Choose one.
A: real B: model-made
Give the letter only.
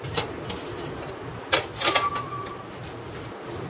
A